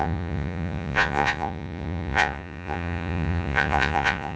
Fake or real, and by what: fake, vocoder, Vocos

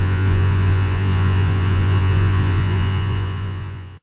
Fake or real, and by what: fake, vocoder, Vocos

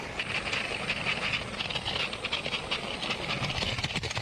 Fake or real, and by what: real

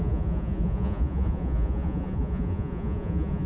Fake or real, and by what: fake, vocoder, Vocos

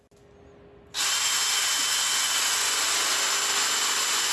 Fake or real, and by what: real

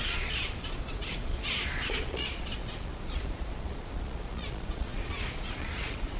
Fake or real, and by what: fake, vocoder, Vocos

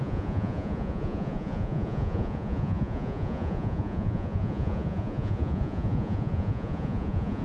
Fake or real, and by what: fake, vocoder, Vocos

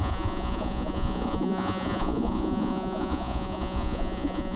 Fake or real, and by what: fake, vocoder, Vocos